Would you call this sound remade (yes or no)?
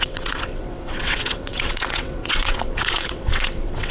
yes